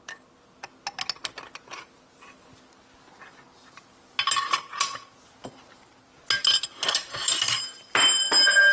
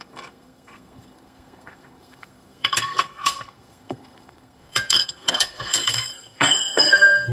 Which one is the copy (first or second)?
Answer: second